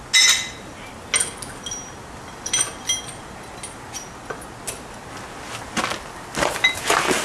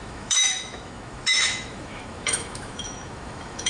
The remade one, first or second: second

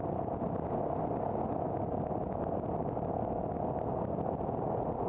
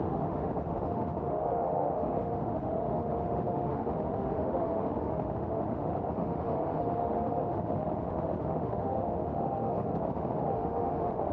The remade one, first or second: second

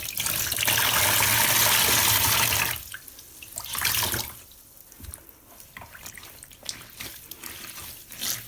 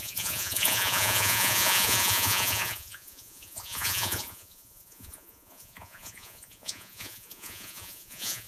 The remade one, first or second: second